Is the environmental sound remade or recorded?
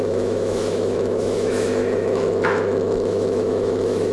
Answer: remade